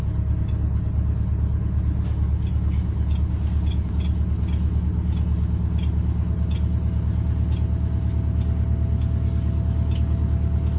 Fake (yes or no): no